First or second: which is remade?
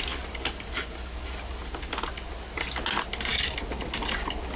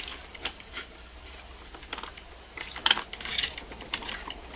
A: second